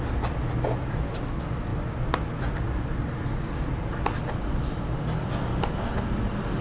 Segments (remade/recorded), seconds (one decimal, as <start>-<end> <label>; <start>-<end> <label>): 0.0-6.6 recorded